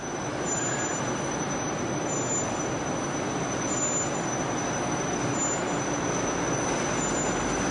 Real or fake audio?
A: real